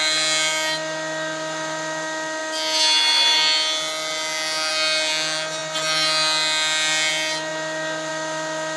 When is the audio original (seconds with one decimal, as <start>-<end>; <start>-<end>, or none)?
0.0-8.8